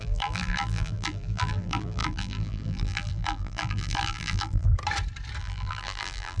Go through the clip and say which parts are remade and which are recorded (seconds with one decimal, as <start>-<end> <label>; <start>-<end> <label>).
0.0-4.7 remade; 4.7-5.4 recorded; 5.4-6.4 remade